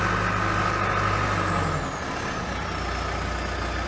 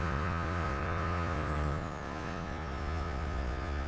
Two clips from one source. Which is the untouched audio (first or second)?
first